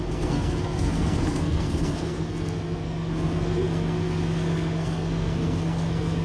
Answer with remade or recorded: remade